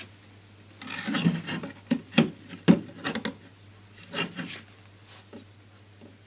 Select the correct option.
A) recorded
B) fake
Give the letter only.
A